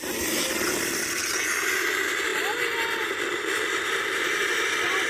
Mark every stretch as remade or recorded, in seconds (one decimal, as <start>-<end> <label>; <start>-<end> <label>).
0.0-5.1 recorded